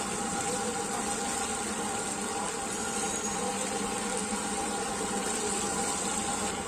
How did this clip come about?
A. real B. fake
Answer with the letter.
A